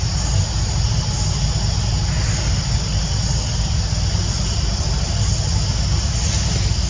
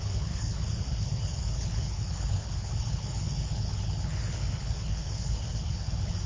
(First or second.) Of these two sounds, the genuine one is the first